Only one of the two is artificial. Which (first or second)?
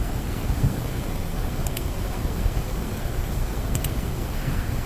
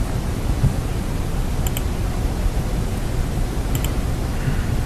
first